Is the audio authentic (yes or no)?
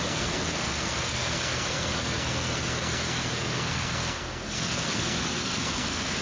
no